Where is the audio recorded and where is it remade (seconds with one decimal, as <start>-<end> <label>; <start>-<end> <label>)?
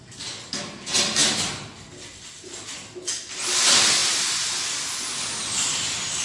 0.0-6.2 recorded